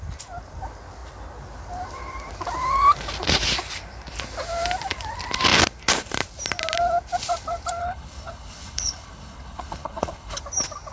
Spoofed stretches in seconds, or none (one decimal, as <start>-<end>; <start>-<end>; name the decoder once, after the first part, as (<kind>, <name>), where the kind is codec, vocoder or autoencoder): 7.8-10.4 (codec, HILCodec)